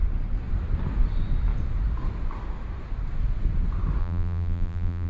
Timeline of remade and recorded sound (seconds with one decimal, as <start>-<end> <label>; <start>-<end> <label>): 0.0-4.0 recorded; 4.0-5.1 remade